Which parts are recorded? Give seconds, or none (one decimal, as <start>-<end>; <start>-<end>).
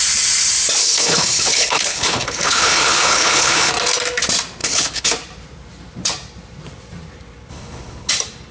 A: 0.0-0.8; 3.7-4.6; 5.1-7.5; 8.1-8.5